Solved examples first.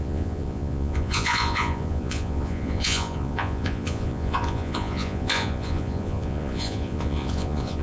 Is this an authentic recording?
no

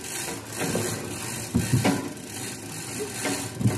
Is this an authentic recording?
yes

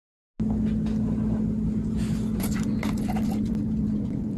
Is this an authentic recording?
yes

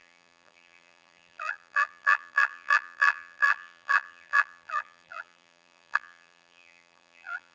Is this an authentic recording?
no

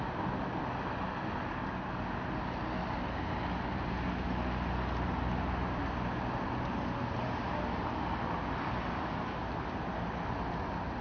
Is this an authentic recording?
yes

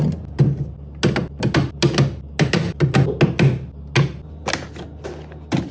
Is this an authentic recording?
yes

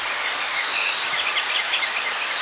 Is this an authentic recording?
yes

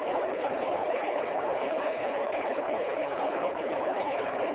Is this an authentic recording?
no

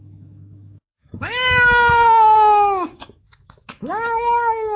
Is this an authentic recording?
no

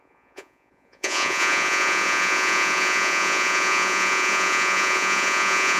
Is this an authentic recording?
no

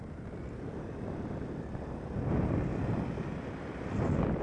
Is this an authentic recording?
yes